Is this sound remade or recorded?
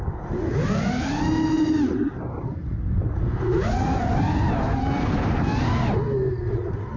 recorded